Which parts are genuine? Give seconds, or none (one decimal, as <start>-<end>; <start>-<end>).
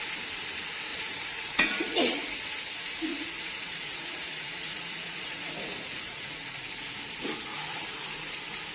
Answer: 0.0-0.9; 2.6-3.1; 6.5-8.7